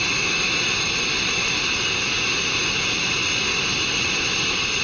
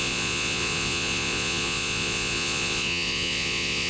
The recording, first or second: first